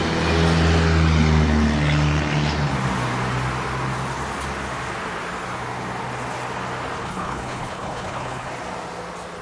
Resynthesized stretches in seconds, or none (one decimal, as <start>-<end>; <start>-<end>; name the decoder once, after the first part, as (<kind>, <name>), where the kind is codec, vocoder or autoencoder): 7.0-8.5 (codec, HILCodec)